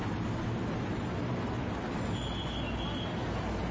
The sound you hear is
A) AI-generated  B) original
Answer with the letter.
B